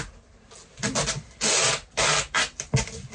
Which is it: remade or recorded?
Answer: recorded